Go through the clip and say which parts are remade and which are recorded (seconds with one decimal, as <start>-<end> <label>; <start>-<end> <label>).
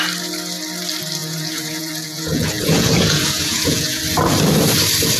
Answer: 0.0-1.2 recorded; 1.2-4.0 remade; 4.0-5.2 recorded